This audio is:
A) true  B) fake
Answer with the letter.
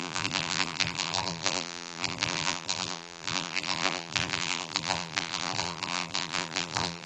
B